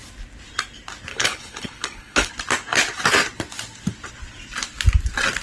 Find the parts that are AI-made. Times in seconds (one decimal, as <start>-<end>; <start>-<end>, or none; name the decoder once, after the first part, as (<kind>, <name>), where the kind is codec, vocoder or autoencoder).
1.1-2.3 (codec, HILCodec)